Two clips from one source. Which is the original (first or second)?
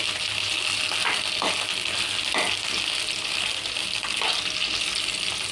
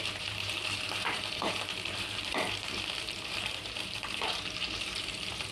first